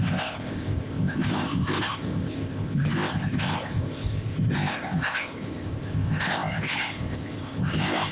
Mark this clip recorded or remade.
remade